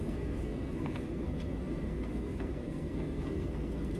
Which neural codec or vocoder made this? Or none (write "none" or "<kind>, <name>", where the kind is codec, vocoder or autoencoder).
codec, SNAC